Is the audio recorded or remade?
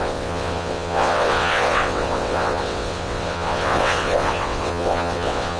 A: remade